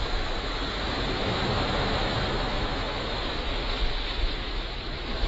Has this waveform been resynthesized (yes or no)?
yes